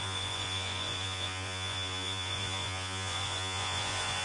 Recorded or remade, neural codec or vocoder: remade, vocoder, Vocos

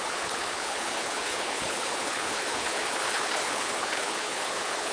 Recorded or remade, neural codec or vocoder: remade, codec, HILCodec